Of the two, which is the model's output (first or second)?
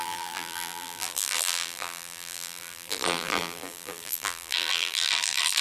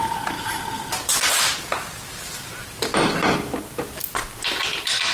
first